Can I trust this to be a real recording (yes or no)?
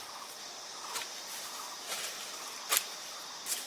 no